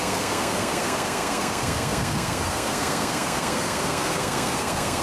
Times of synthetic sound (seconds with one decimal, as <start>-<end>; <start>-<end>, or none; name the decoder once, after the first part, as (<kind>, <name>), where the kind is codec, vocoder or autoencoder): 0.0-5.0 (codec, SNAC)